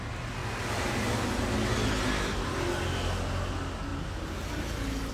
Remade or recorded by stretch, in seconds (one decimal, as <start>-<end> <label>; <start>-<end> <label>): 0.0-5.1 recorded